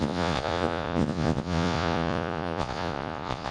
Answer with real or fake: fake